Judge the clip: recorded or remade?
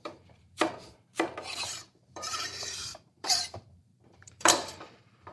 remade